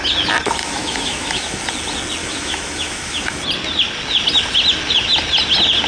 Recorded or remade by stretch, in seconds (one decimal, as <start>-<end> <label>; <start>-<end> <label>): 0.0-0.6 recorded; 0.6-1.6 remade; 1.6-2.2 recorded; 2.2-3.4 remade; 3.4-5.9 recorded